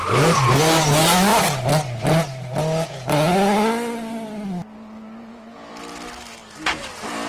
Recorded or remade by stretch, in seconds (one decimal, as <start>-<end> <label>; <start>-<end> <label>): 0.0-7.3 recorded